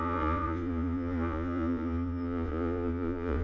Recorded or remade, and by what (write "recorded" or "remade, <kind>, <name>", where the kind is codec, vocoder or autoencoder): remade, vocoder, Vocos